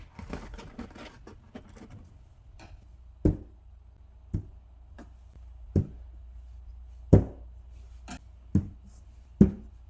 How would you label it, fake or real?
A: real